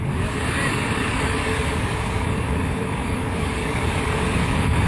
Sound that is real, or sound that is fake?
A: fake